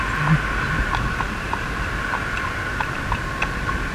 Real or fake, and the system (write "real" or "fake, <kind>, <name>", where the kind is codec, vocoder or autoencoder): real